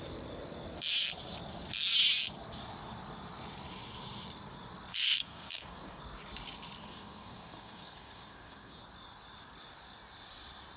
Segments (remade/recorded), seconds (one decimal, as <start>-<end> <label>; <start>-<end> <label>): 0.0-4.9 recorded; 4.9-6.0 remade; 6.0-6.8 recorded; 6.8-8.8 remade; 8.8-10.8 recorded